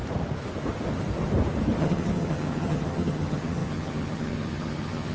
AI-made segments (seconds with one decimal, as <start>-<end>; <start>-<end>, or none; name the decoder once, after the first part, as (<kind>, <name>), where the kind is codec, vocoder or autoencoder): 1.8-5.1 (vocoder, HiFi-GAN)

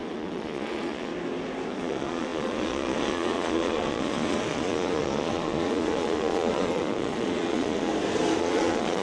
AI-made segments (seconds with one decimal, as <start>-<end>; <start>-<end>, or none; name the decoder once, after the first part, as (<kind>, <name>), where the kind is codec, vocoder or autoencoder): 0.0-1.1 (vocoder, Vocos); 1.7-7.9; 8.4-9.0

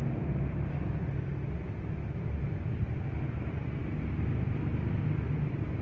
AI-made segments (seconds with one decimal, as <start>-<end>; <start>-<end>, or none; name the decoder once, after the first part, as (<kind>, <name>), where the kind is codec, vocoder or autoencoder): none